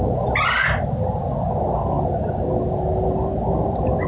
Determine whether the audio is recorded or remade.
recorded